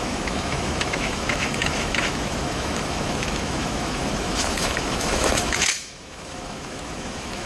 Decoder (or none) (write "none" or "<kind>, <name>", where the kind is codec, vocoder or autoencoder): autoencoder, DAC-VAE